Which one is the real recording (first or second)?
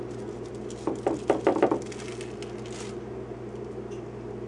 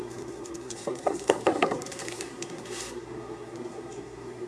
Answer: first